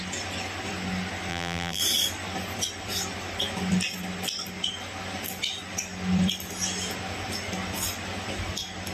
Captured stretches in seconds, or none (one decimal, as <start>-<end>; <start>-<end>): 0.0-1.3; 1.8-8.9